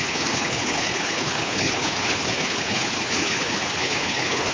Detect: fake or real fake